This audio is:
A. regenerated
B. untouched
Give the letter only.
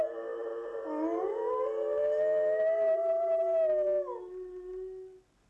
B